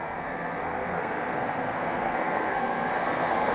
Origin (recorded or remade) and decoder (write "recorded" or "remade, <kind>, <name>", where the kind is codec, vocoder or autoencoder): remade, codec, SNAC